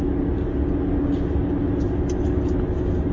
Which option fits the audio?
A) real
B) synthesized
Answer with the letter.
A